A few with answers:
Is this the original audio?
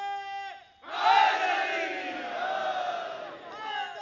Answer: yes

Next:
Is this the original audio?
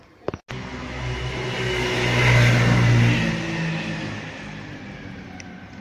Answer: yes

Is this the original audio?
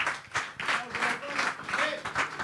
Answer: yes